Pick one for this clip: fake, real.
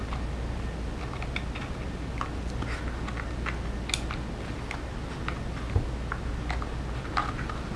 real